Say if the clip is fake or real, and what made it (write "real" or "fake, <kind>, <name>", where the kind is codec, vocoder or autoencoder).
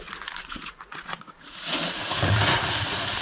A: fake, vocoder, Vocos